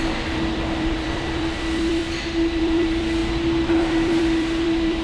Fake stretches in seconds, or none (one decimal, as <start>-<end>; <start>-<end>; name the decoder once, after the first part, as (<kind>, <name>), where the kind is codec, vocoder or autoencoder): 0.0-2.0 (vocoder, BigVGAN v2); 2.6-3.2; 3.7-5.0